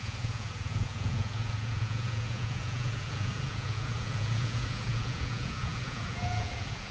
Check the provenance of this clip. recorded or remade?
remade